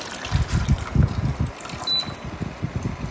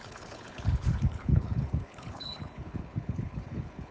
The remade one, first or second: second